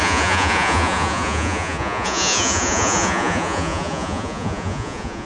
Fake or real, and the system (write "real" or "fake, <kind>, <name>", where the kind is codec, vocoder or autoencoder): fake, vocoder, Vocos